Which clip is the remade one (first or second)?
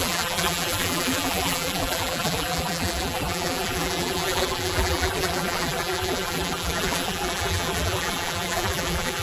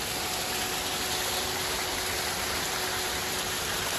first